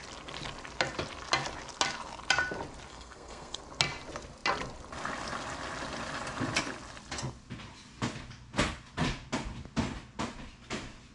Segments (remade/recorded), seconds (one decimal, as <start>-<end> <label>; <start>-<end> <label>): 0.0-2.9 recorded; 2.9-3.6 remade; 3.6-11.1 recorded